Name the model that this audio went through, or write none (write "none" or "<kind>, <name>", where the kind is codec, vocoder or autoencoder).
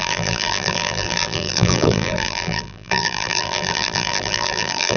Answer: vocoder, BigVGAN v2